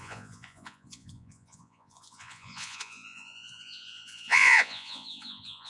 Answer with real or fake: fake